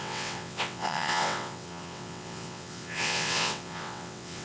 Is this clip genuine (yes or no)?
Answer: no